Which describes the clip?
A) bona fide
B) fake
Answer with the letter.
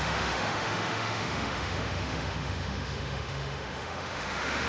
B